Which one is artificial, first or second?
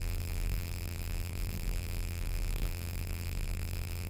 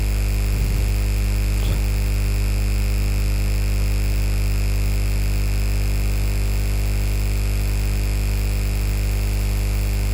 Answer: first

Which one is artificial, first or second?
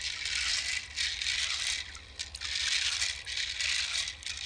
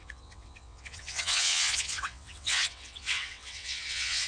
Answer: second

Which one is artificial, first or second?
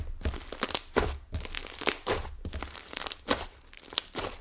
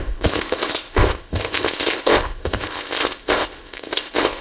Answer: second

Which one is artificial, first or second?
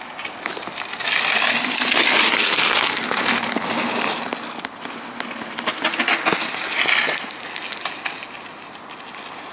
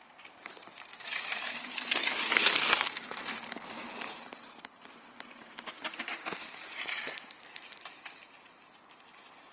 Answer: second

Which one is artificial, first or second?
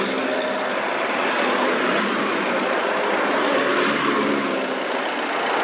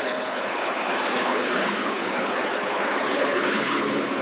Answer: second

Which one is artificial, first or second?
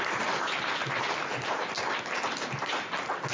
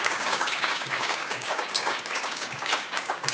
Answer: second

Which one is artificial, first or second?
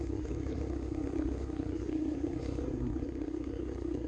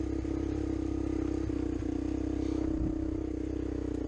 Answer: first